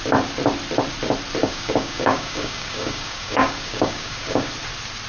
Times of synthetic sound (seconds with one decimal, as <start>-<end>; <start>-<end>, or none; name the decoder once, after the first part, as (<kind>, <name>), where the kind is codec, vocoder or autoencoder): 1.4-4.5 (codec, DAC)